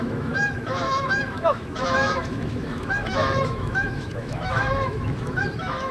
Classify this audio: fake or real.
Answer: fake